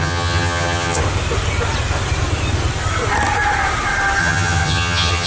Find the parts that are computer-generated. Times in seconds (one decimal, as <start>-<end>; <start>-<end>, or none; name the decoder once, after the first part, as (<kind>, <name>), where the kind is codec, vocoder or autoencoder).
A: 0.0-1.0 (vocoder, HiFi-GAN); 4.2-5.3